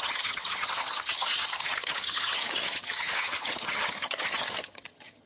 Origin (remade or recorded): remade